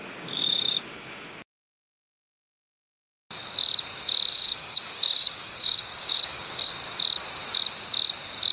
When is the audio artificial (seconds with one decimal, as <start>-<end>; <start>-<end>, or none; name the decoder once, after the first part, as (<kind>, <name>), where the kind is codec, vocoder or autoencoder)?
0.0-3.2 (codec, DAC); 4.3-6.7